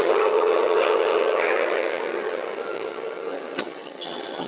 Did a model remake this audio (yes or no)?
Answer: yes